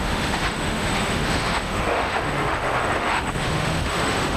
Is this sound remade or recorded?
remade